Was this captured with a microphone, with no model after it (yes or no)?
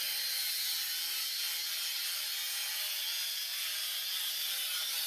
yes